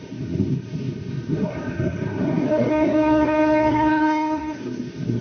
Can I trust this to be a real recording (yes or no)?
no